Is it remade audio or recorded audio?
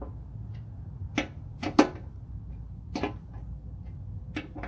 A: recorded